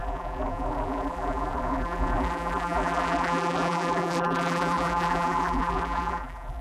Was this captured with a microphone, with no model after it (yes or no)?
no